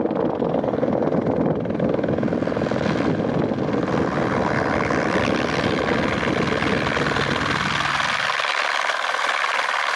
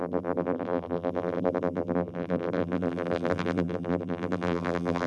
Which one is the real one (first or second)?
first